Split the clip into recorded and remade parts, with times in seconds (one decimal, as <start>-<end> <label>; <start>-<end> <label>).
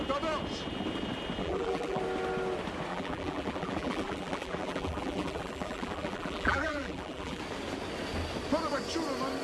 0.0-1.4 recorded; 1.4-2.0 remade; 2.0-2.9 recorded; 2.9-7.4 remade; 7.4-9.4 recorded